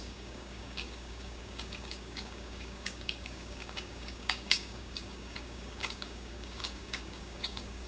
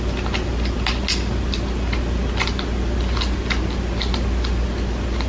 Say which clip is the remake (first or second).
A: first